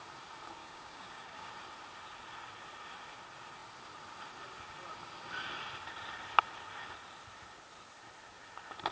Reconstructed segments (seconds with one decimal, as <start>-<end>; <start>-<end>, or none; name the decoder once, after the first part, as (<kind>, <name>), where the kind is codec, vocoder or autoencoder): 0.6-1.5 (codec, DAC)